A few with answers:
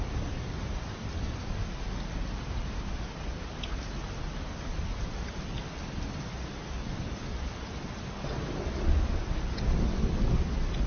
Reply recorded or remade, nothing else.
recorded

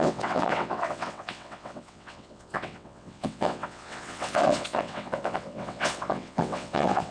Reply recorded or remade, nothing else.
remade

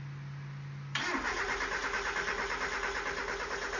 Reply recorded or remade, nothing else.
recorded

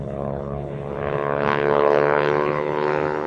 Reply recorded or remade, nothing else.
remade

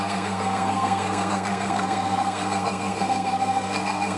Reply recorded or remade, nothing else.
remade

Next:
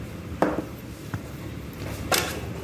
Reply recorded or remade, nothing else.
remade